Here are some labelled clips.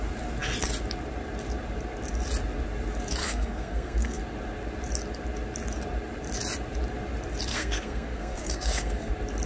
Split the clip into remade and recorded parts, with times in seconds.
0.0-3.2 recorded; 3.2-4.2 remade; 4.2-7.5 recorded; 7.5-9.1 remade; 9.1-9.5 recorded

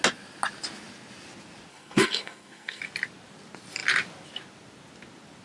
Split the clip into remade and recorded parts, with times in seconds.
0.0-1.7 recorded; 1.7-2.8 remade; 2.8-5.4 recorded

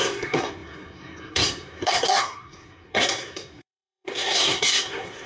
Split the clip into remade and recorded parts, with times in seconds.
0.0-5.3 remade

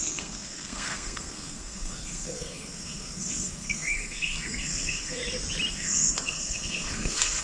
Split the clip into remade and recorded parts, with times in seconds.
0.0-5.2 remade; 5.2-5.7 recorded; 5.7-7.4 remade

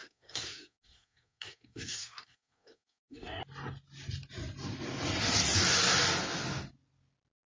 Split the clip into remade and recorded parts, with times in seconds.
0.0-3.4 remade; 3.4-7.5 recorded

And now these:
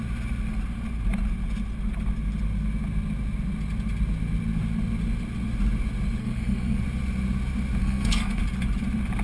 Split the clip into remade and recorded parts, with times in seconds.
0.0-6.2 recorded; 6.2-6.8 remade; 6.8-7.8 recorded; 7.8-8.4 remade; 8.4-9.2 recorded

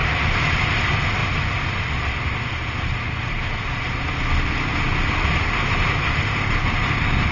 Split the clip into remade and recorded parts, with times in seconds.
0.0-7.3 recorded

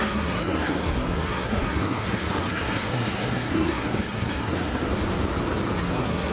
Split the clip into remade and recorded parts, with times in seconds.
0.0-4.9 remade; 4.9-5.8 recorded; 5.8-6.3 remade